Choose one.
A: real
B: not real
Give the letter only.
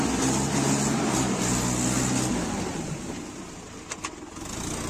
A